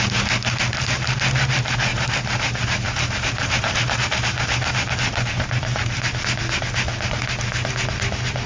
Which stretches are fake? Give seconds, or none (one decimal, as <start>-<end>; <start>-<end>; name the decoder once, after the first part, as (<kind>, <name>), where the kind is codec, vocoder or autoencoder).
1.9-6.2 (vocoder, BigVGAN v2)